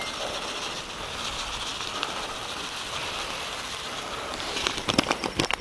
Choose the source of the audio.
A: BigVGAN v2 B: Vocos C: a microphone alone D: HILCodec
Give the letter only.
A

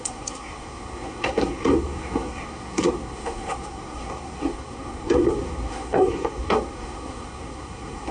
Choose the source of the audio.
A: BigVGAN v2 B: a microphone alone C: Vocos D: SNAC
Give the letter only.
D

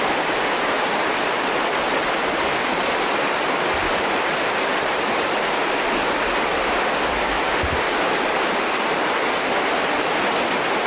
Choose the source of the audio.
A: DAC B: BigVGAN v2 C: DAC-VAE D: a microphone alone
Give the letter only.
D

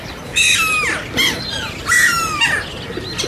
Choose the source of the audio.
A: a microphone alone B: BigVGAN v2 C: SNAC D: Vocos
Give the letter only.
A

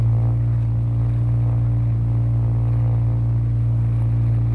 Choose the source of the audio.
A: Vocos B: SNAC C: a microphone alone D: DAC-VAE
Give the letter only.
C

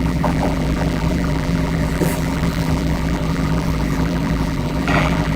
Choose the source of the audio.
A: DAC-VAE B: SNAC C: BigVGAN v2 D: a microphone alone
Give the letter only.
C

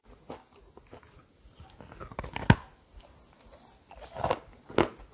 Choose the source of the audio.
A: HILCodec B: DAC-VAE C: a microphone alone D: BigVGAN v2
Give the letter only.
C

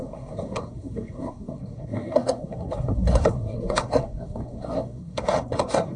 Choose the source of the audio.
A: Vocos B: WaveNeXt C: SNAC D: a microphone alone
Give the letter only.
C